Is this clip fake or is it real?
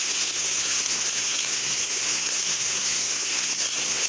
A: fake